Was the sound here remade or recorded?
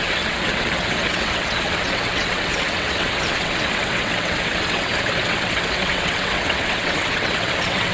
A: remade